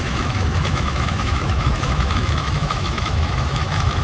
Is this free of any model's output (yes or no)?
no